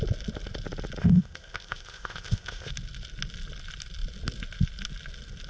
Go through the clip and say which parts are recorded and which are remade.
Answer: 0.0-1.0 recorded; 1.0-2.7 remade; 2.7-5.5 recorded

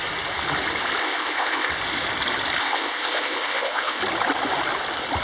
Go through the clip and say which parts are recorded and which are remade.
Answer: 0.0-1.0 recorded; 1.0-1.7 remade; 1.7-2.6 recorded; 2.6-4.0 remade; 4.0-5.2 recorded